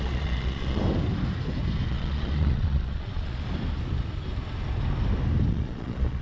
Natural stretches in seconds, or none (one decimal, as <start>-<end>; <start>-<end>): 0.8-1.9; 3.4-5.5